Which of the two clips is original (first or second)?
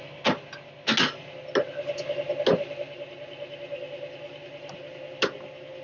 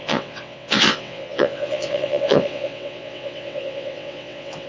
first